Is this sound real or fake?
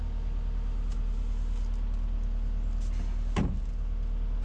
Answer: real